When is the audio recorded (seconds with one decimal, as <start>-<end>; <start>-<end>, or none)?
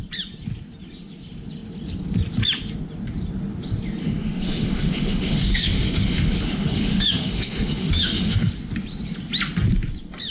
0.0-4.0; 8.5-10.3